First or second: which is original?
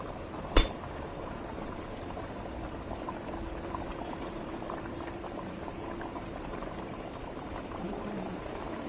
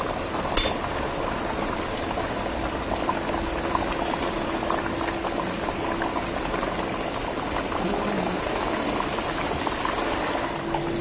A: second